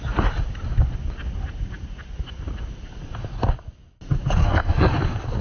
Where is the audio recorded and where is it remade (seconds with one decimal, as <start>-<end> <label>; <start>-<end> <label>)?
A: 0.0-4.4 recorded; 4.4-4.9 remade; 4.9-5.4 recorded